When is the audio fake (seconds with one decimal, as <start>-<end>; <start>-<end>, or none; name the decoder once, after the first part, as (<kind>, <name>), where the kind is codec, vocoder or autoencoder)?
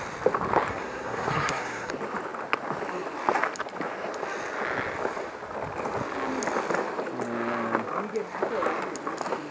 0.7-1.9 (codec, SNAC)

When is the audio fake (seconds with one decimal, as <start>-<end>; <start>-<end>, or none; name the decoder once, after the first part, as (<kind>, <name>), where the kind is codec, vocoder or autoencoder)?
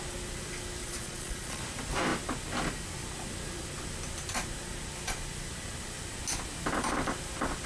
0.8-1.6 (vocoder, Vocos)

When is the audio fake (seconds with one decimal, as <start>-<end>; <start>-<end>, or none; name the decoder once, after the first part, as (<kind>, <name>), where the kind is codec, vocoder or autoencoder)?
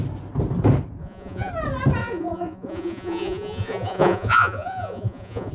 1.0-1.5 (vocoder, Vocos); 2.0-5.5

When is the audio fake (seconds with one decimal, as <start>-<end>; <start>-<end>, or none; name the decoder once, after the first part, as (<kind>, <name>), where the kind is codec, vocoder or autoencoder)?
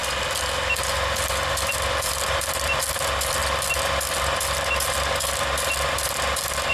1.5-3.4 (vocoder, BigVGAN v2)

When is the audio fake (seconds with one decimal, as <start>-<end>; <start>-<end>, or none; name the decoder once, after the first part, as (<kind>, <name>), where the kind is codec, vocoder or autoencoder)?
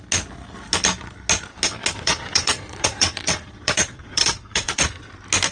1.8-5.1 (vocoder, Vocos)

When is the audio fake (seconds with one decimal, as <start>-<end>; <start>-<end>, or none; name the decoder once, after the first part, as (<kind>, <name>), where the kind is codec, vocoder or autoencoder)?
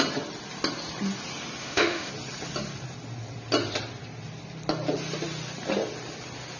1.6-2.1 (autoencoder, DAC-VAE)